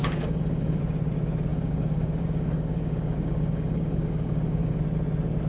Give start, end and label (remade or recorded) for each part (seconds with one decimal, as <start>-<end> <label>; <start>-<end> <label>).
0.0-0.8 remade; 0.8-1.5 recorded; 1.5-4.8 remade; 4.8-5.5 recorded